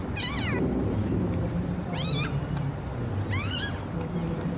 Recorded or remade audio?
recorded